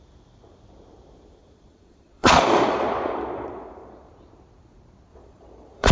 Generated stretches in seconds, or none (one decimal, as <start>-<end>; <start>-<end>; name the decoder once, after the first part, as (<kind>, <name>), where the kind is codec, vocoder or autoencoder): 1.4-4.1 (vocoder, Vocos); 5.1-5.9